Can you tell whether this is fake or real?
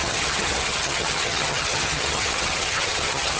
fake